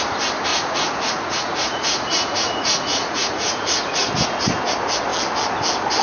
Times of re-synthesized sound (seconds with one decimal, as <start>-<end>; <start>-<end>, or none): 0.5-4.1

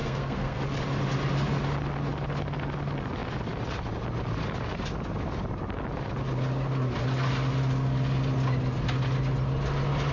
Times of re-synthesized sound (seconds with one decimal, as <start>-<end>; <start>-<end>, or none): 0.0-0.6

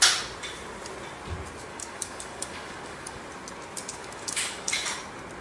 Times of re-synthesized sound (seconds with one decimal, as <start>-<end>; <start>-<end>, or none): 1.7-3.2; 4.0-4.7

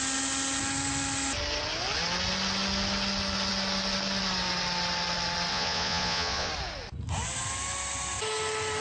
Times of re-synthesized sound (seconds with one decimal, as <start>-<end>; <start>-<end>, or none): 5.5-6.5

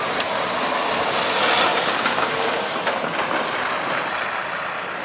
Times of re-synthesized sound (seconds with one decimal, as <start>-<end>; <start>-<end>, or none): none

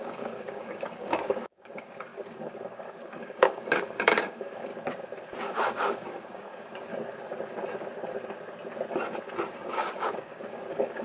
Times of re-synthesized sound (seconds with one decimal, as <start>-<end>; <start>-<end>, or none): 0.0-4.7; 5.4-6.9; 9.5-11.0